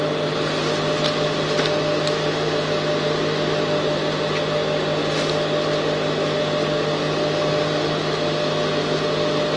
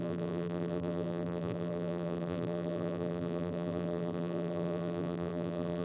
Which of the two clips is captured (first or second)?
first